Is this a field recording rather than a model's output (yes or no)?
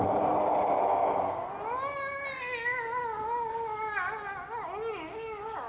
yes